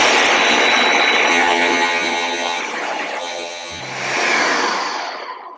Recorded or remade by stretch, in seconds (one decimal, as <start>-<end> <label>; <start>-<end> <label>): 0.0-1.3 recorded; 1.3-2.6 remade; 2.6-3.2 recorded; 3.2-3.8 remade; 3.8-5.6 recorded